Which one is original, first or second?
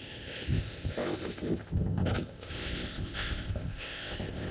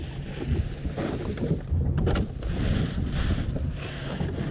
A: second